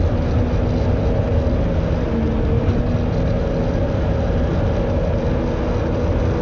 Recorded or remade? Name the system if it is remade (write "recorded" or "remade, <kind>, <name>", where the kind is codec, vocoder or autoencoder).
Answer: recorded